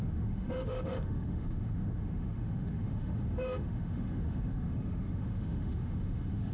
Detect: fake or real fake